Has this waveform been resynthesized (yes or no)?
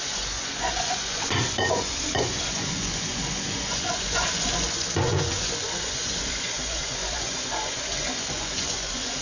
yes